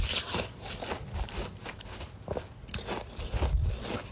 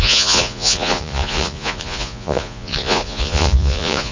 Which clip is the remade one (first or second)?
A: second